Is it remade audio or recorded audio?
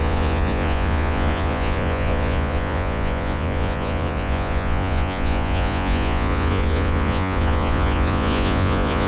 remade